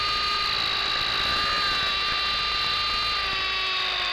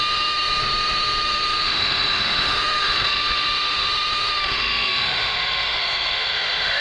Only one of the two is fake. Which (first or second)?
second